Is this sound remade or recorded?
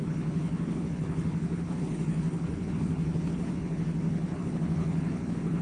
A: remade